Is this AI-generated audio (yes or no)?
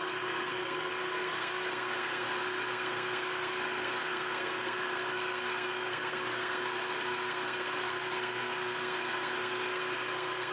yes